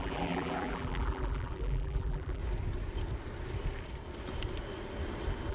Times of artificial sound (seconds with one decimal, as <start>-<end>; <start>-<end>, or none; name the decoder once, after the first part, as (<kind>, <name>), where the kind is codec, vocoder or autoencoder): 0.0-2.4 (vocoder, BigVGAN v2)